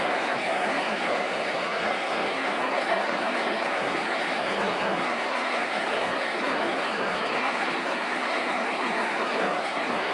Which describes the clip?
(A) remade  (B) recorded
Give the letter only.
A